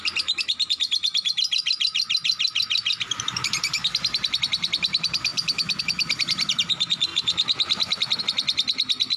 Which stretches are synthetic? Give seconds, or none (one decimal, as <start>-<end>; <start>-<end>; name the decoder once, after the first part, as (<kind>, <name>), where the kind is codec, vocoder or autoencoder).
0.0-5.3 (vocoder, BigVGAN v2); 5.8-9.2